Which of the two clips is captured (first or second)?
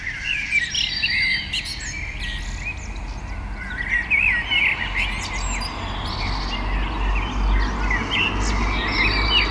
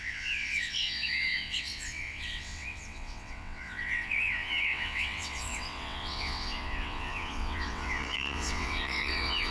first